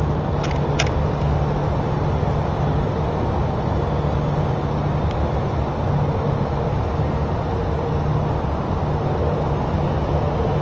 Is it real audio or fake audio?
real